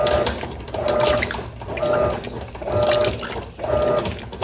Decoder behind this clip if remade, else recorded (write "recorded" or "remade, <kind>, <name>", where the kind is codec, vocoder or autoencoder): recorded